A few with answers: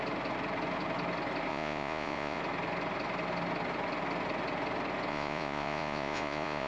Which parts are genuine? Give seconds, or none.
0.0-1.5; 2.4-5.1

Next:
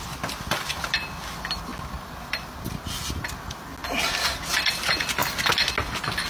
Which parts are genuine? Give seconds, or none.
0.0-1.7; 3.2-6.3